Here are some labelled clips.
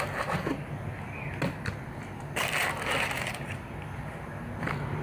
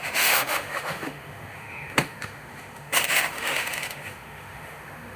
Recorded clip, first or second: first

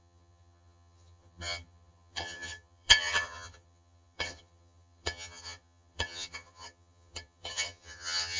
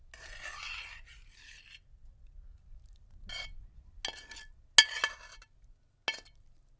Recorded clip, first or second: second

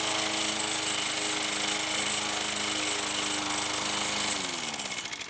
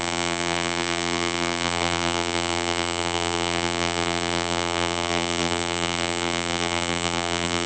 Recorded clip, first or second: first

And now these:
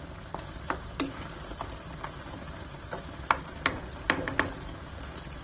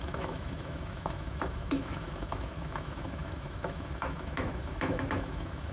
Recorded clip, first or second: first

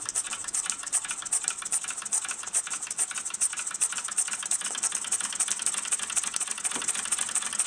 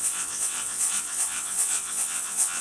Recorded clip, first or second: first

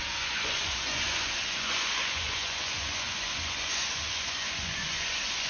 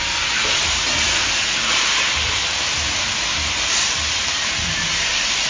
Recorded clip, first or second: second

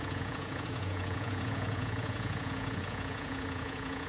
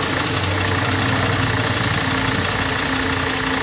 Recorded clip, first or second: second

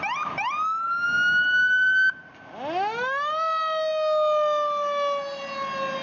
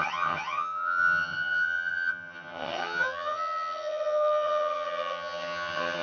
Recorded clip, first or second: first